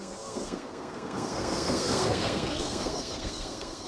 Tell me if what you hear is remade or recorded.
remade